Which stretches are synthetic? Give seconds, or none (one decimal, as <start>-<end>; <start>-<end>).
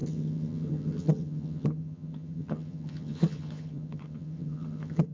0.0-5.1